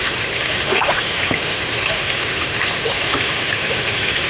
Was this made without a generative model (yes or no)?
no